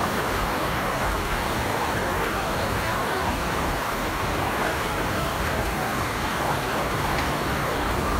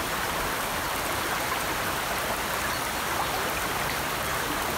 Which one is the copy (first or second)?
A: first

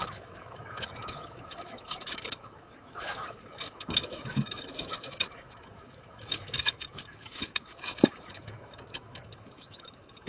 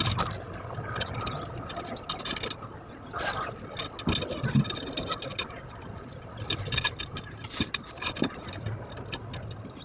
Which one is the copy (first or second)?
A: first